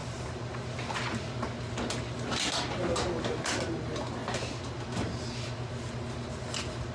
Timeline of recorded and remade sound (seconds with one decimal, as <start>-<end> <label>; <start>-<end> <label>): 0.0-6.9 recorded